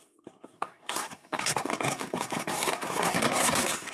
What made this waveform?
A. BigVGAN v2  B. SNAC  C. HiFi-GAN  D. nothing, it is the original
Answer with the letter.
B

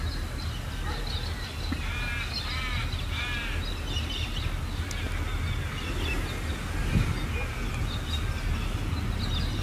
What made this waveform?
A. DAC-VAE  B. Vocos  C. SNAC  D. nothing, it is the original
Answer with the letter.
D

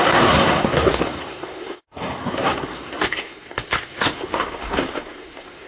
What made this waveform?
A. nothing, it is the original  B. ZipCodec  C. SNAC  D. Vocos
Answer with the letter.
C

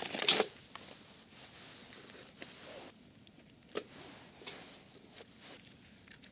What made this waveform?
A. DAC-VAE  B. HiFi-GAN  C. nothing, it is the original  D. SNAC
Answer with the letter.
C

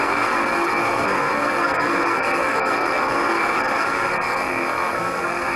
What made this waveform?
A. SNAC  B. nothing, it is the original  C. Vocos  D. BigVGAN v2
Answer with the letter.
A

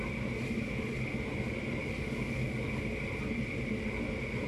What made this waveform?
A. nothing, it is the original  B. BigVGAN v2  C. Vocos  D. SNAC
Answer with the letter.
A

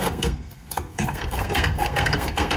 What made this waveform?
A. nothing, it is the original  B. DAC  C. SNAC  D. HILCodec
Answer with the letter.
C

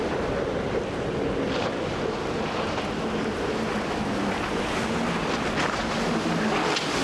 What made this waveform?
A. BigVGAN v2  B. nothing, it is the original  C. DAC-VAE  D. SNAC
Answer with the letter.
B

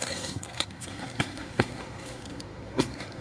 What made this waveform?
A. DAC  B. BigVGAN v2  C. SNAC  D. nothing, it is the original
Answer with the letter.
C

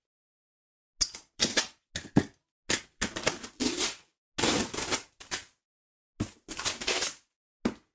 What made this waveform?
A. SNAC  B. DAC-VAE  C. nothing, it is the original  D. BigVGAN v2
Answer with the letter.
C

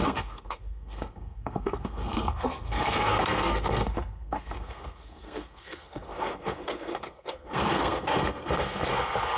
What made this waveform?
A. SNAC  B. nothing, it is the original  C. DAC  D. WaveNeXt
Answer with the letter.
A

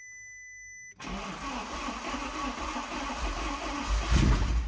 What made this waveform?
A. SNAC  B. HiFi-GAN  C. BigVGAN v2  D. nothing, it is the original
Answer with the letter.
D